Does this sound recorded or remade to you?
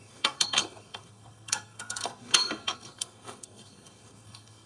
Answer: remade